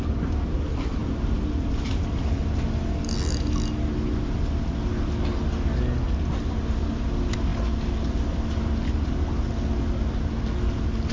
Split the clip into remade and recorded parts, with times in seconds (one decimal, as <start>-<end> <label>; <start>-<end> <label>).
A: 0.0-11.1 recorded